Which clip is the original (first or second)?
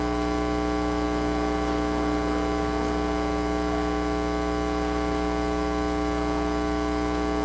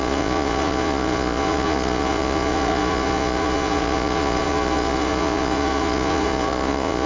first